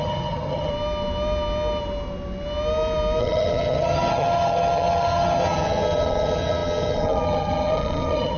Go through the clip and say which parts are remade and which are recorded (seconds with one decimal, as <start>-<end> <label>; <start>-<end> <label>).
0.0-0.7 remade; 0.7-3.2 recorded; 3.2-8.4 remade